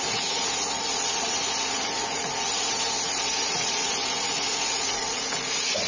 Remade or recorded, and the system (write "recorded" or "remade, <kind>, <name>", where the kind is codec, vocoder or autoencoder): remade, vocoder, Vocos